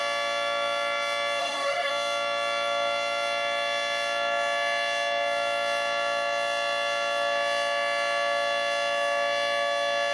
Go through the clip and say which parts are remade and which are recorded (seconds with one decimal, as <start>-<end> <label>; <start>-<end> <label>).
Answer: 0.0-1.4 recorded; 1.4-1.9 remade; 1.9-10.1 recorded